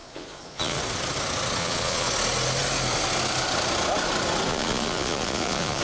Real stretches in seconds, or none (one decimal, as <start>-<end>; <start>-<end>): 0.8-1.6; 2.1-4.5